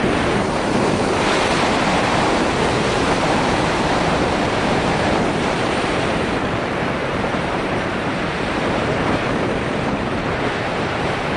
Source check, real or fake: fake